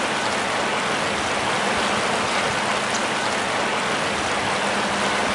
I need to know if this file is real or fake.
real